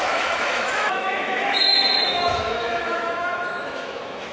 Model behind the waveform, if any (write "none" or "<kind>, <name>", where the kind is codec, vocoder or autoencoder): autoencoder, DAC-VAE